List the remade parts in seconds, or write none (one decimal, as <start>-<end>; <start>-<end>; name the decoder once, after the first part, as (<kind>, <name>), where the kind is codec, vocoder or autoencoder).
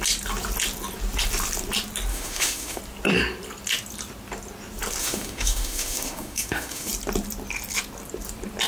2.1-2.8 (autoencoder, DAC-VAE); 5.0-6.9